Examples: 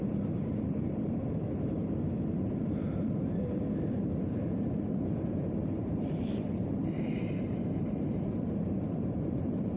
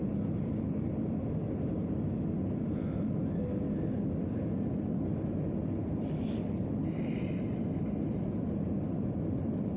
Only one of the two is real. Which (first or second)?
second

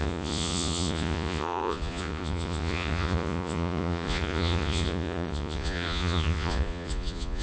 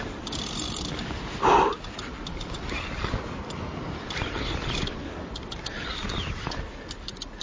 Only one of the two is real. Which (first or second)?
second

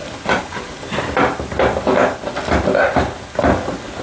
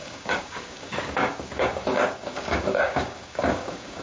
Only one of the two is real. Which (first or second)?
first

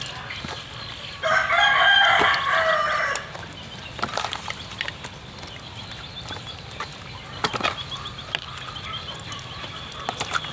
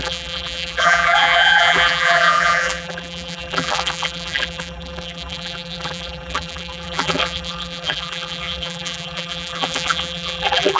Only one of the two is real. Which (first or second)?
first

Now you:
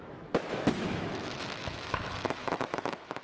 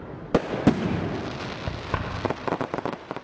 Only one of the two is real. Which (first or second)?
second